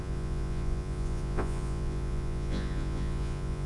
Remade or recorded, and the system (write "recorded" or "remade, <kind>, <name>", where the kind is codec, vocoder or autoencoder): remade, vocoder, Vocos